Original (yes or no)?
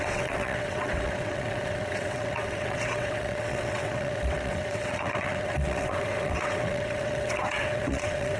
no